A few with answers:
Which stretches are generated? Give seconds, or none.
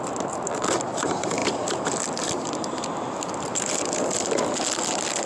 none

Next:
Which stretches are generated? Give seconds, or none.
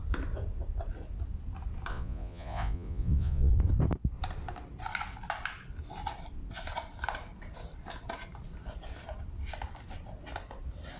1.9-3.5 (vocoder, Vocos)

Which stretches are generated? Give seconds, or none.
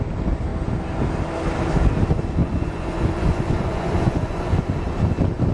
2.4-4.6 (vocoder, Vocos)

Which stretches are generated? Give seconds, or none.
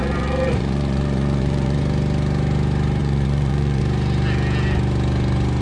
0.0-1.8 (vocoder, Vocos); 3.0-3.8